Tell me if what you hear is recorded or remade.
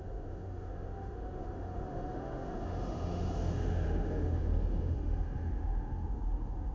remade